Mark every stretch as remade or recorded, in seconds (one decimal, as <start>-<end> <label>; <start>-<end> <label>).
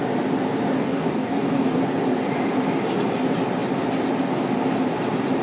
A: 0.0-0.8 recorded; 0.8-1.8 remade; 1.8-5.4 recorded